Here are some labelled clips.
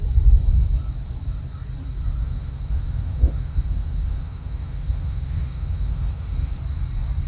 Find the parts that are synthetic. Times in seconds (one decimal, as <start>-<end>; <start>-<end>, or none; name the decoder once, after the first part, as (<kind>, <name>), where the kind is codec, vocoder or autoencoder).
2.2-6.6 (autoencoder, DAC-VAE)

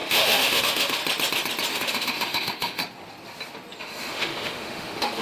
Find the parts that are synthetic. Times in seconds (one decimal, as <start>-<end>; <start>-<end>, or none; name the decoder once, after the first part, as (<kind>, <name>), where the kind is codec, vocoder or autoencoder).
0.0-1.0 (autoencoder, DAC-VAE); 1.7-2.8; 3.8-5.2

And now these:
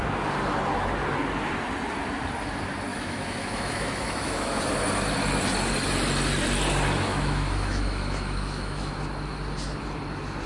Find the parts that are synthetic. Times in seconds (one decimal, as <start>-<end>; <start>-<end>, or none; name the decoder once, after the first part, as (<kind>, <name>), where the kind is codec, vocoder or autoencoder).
2.9-4.6 (autoencoder, DAC-VAE); 7.1-8.9

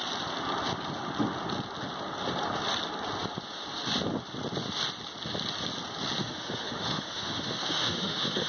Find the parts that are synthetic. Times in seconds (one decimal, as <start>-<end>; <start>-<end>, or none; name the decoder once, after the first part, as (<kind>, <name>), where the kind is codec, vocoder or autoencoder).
6.2-8.5 (autoencoder, DAC-VAE)